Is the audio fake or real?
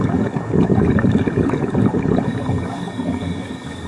fake